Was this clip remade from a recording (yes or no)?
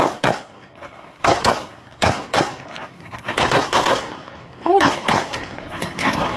yes